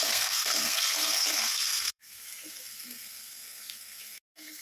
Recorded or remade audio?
remade